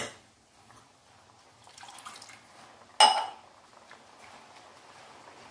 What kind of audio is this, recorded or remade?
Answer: recorded